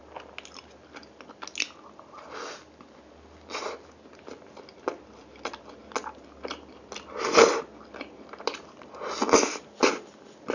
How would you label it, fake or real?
real